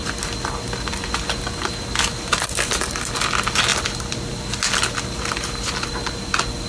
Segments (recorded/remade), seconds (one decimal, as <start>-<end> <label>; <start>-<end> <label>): 0.0-6.7 recorded